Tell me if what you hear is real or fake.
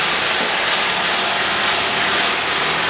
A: real